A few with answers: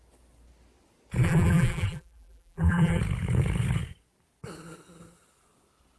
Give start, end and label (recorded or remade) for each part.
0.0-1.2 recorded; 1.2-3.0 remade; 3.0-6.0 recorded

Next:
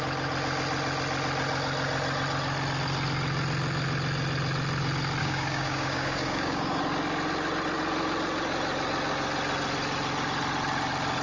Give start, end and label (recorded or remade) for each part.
0.0-5.2 recorded; 5.2-6.8 remade; 6.8-11.2 recorded

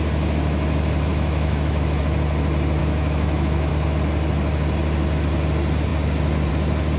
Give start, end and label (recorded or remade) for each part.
0.0-1.1 recorded; 1.1-2.0 remade; 2.0-2.8 recorded; 2.8-3.7 remade; 3.7-7.0 recorded